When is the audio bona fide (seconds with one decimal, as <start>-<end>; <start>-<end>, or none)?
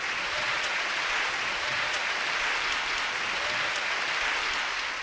2.0-5.0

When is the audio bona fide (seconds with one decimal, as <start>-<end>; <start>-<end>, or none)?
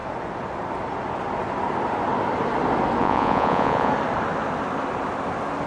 0.0-3.0; 3.9-5.7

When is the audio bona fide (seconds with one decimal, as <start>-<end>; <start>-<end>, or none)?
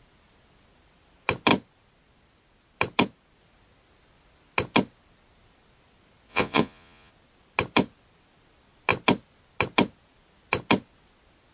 0.0-6.3; 7.1-11.5